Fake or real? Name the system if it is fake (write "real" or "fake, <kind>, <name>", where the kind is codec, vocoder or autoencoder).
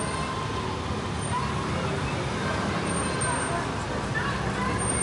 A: real